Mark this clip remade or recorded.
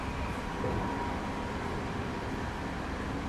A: recorded